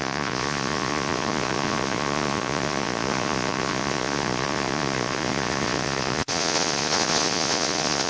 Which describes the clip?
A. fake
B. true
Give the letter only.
A